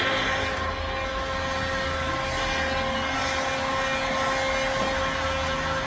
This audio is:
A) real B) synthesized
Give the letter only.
A